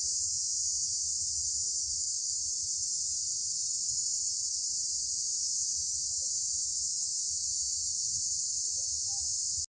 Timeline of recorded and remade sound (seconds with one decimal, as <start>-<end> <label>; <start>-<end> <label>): 0.0-1.8 recorded; 1.8-2.4 remade; 2.4-9.8 recorded